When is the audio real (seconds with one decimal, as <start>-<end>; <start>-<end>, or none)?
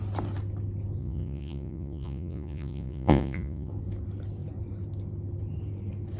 0.0-1.0; 3.7-6.2